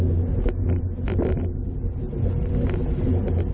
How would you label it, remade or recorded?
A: recorded